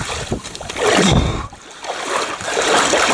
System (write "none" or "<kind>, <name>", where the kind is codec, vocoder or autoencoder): none